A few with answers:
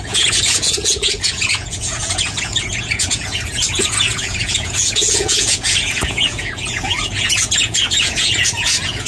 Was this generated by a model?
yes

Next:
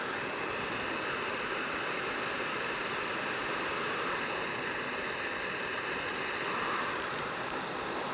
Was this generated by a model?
no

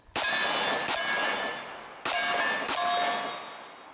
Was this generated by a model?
no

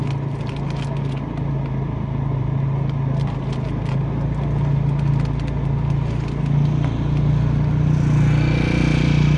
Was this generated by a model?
no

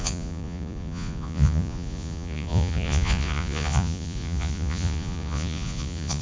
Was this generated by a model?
yes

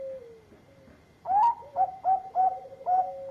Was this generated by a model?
no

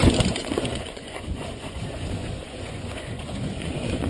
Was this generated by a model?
yes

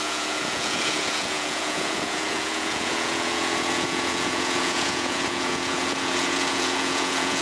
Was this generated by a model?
yes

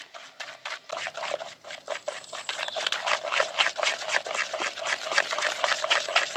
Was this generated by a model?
no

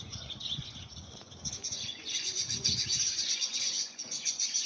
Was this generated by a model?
yes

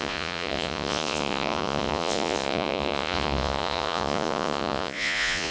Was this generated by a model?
yes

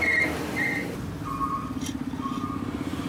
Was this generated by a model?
no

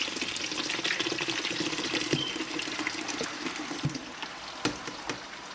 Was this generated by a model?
no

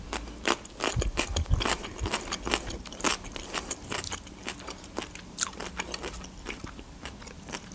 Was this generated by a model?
no